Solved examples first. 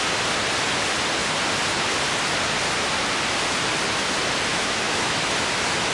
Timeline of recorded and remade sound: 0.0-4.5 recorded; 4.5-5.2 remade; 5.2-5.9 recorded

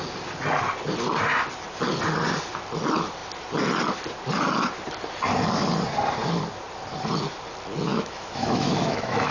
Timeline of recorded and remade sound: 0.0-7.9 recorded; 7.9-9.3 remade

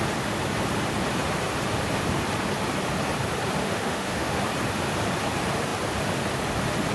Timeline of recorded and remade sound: 0.0-3.6 recorded; 3.6-4.4 remade; 4.4-6.9 recorded

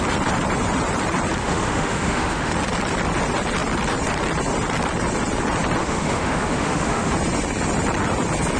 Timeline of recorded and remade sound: 0.0-1.4 recorded; 1.4-2.5 remade; 2.5-5.8 recorded; 5.8-7.1 remade; 7.1-8.6 recorded

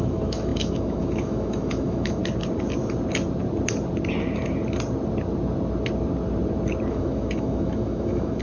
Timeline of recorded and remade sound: 0.0-2.2 remade; 2.2-6.9 recorded; 6.9-8.4 remade

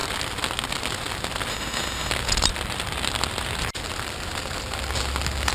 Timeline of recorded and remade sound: 0.0-1.5 recorded; 1.5-2.1 remade; 2.1-5.5 recorded

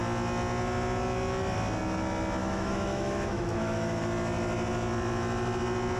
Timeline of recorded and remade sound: 0.0-2.4 recorded; 2.4-4.0 remade; 4.0-6.0 recorded